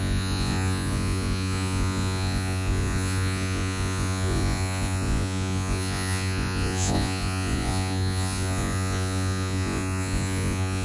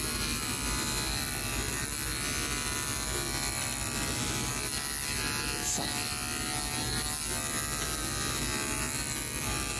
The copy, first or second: first